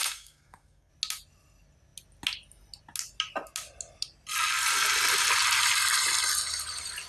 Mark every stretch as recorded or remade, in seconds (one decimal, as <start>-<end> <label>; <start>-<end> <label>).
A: 0.0-0.9 remade; 0.9-7.1 recorded